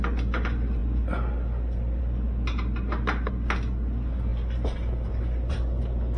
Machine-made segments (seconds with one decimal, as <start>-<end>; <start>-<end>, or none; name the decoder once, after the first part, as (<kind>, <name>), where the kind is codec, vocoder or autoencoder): none